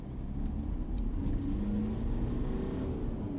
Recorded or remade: recorded